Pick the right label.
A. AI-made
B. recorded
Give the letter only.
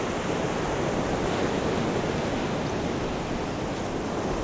B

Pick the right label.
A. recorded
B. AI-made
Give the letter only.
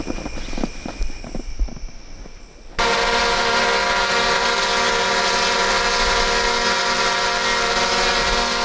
A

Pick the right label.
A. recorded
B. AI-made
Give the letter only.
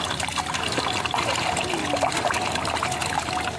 A